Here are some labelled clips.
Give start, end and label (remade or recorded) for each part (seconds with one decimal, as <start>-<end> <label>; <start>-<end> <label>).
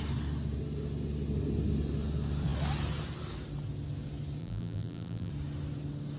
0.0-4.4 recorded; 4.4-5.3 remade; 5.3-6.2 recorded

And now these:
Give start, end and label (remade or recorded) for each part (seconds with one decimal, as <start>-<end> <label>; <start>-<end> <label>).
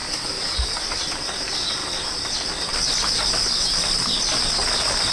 0.0-1.0 remade; 1.0-5.1 recorded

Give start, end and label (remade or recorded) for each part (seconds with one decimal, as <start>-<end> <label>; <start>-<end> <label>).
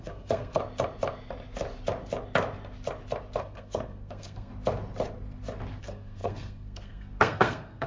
0.0-0.6 remade; 0.6-3.4 recorded; 3.4-4.5 remade; 4.5-5.8 recorded; 5.8-7.9 remade